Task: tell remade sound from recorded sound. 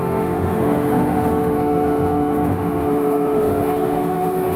remade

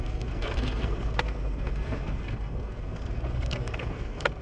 remade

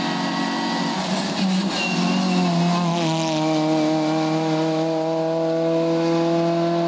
recorded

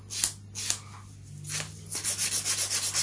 recorded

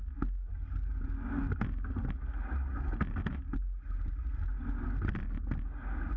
recorded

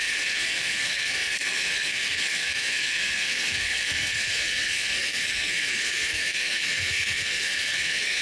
remade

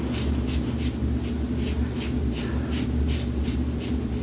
recorded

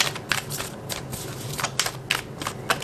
recorded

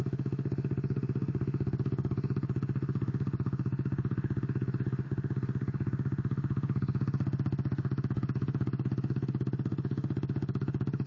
remade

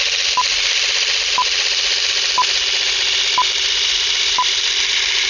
recorded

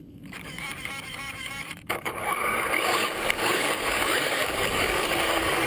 remade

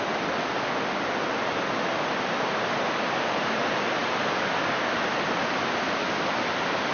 recorded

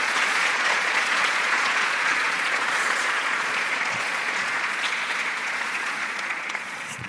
remade